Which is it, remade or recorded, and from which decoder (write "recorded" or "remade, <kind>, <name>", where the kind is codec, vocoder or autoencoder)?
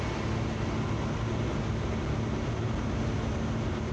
recorded